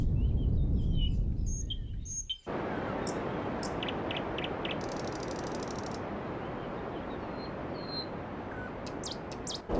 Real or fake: real